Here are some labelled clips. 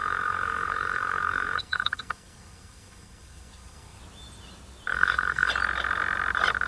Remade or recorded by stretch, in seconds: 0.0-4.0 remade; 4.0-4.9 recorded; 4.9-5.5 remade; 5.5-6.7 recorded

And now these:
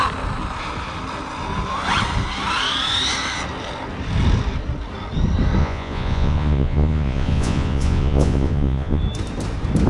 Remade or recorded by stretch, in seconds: 0.0-5.6 recorded; 5.6-9.0 remade; 9.0-9.9 recorded

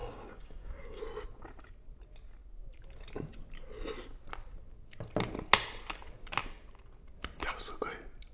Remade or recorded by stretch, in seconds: 0.0-1.0 remade; 1.0-8.3 recorded